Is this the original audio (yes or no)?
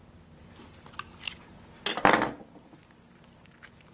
yes